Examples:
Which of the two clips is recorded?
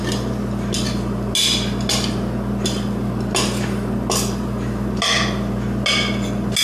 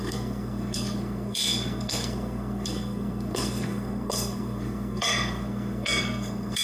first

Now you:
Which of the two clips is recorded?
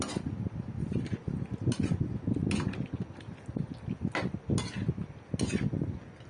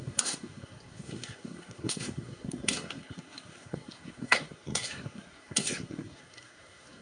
first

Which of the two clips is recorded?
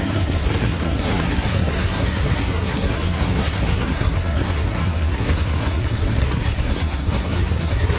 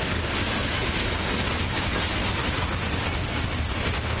second